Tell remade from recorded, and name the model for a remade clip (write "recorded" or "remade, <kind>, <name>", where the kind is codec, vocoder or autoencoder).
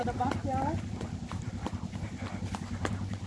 recorded